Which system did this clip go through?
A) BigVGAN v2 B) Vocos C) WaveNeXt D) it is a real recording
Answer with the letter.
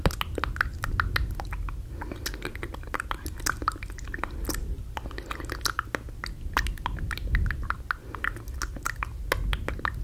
D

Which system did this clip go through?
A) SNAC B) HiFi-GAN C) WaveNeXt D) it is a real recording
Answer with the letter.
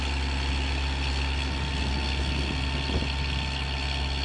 D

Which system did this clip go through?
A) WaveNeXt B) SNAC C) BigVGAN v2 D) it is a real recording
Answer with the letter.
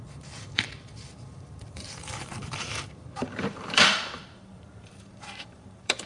C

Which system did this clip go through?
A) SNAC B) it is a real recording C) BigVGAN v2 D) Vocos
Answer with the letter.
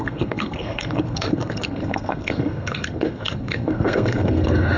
A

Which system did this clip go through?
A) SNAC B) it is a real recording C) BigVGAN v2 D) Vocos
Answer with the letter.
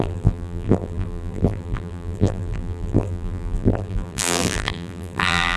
C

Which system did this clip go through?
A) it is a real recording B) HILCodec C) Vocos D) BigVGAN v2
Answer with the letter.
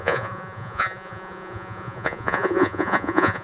C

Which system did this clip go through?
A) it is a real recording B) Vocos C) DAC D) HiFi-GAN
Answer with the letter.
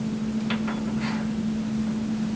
A